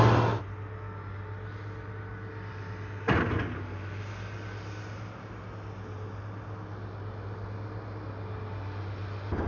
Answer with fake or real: real